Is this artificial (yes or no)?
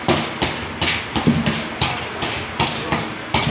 no